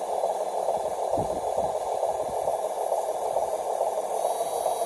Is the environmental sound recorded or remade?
recorded